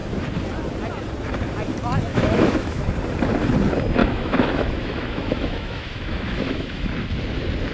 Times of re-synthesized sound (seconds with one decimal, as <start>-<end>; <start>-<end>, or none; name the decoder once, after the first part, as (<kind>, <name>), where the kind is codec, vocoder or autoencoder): 2.1-2.8 (autoencoder, DAC-VAE); 4.0-6.9